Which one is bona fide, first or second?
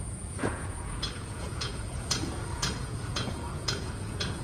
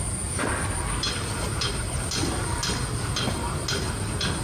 second